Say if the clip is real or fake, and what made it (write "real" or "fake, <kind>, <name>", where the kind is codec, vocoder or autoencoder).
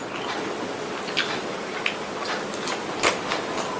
real